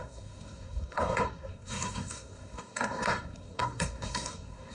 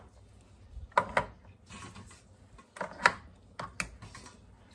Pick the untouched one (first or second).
second